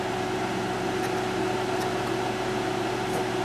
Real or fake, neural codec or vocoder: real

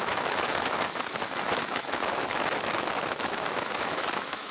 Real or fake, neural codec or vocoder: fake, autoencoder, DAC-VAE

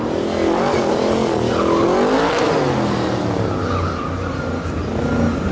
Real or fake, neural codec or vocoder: real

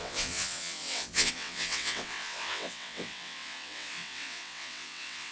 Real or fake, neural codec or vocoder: fake, vocoder, WaveNeXt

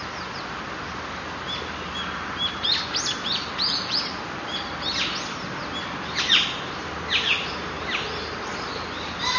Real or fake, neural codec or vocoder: real